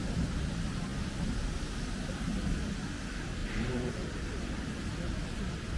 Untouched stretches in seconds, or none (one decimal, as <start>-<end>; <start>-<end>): 0.0-5.8